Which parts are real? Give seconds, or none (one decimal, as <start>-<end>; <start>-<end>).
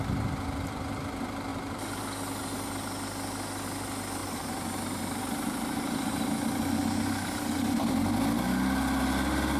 0.0-1.5; 2.0-4.2; 6.3-9.6